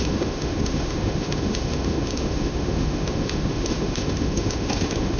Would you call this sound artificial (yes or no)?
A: yes